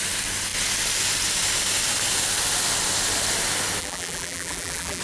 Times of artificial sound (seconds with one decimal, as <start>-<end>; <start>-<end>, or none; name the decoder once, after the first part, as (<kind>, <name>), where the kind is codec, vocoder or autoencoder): 3.8-5.0 (vocoder, BigVGAN v2)